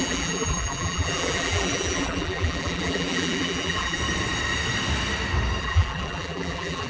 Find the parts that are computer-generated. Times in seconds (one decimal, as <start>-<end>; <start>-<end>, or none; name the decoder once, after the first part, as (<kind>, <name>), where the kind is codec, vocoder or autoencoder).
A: 0.0-4.0 (vocoder, BigVGAN v2); 5.6-6.9